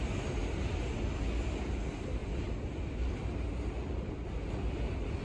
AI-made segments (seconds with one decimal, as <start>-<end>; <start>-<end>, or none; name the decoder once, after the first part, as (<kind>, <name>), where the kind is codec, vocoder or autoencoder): 2.2-4.1 (vocoder, BigVGAN v2)

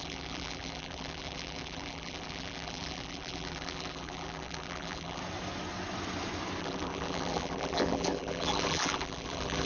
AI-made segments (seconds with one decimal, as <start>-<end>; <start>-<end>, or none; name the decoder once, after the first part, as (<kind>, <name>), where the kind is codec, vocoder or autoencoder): 0.0-5.2 (vocoder, BigVGAN v2); 6.6-9.7

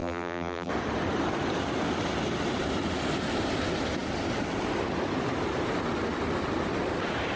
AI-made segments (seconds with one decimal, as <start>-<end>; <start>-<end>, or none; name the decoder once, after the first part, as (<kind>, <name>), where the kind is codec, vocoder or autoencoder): 0.0-0.7 (vocoder, BigVGAN v2)

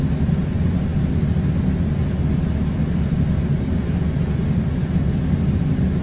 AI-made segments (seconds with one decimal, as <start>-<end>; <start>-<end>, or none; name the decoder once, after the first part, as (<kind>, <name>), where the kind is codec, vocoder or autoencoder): none